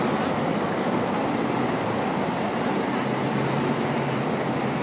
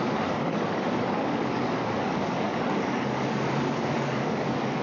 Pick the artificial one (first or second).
second